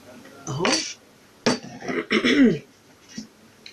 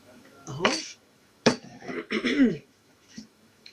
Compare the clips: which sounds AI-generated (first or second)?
second